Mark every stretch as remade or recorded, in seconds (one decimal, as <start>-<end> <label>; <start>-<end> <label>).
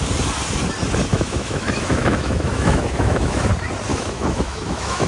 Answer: 0.0-1.1 recorded; 1.1-3.5 remade; 3.5-3.9 recorded; 3.9-5.1 remade